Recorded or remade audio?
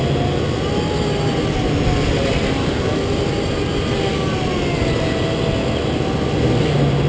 recorded